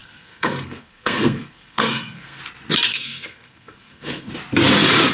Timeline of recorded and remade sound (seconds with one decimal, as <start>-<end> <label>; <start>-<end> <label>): 0.0-2.4 remade; 2.4-2.9 recorded; 2.9-4.3 remade; 4.3-5.1 recorded